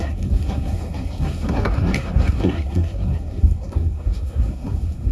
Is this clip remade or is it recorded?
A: remade